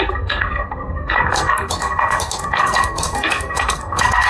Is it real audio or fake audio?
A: fake